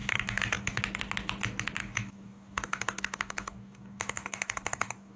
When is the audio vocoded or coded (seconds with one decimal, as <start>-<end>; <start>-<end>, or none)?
0.0-0.8; 1.8-5.2